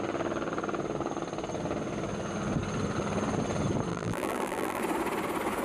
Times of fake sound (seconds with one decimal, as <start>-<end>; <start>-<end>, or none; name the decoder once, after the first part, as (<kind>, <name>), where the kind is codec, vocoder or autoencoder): 3.9-4.8 (vocoder, BigVGAN v2)